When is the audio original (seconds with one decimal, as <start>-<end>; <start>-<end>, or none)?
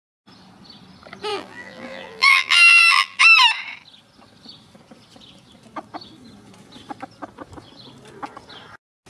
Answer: 0.0-1.3; 3.2-9.1